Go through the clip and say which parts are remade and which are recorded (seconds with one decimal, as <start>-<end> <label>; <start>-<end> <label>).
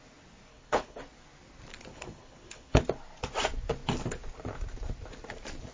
0.0-0.5 recorded; 0.5-1.0 remade; 1.0-1.9 recorded; 1.9-2.8 remade; 2.8-5.7 recorded